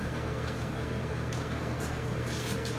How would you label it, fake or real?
fake